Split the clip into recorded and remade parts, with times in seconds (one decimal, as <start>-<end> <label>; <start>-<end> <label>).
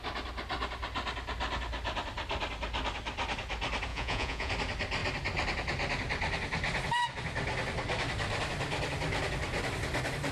0.0-3.9 recorded; 3.9-4.5 remade; 4.5-10.3 recorded